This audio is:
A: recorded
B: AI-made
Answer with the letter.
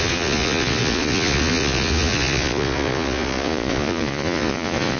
B